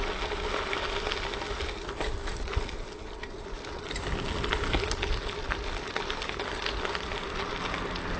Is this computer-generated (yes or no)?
no